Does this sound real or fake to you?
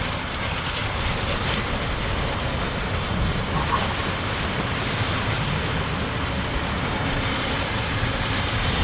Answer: real